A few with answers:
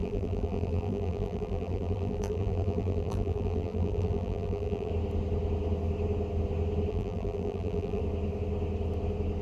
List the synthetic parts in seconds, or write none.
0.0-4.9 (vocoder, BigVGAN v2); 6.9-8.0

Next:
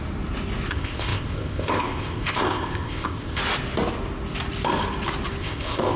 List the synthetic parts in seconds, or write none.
0.7-3.4 (codec, ZipCodec); 5.4-6.0

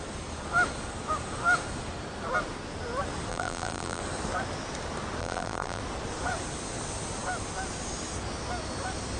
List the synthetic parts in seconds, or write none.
3.3-4.0 (vocoder, BigVGAN v2); 5.2-5.8

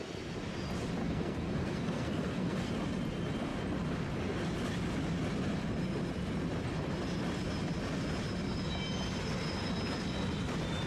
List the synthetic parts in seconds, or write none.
1.0-2.7 (codec, SNAC)

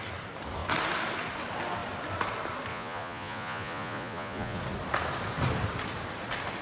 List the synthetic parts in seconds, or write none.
2.7-4.6 (vocoder, Vocos)

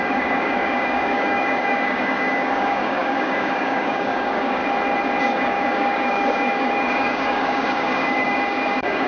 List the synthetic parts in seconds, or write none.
0.0-4.6 (codec, DAC); 5.2-9.1

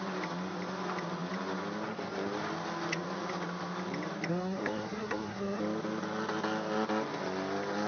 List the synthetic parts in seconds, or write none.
4.3-5.6 (codec, SNAC)

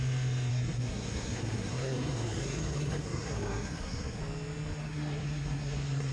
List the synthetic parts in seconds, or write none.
0.5-4.2 (codec, SNAC); 4.8-6.1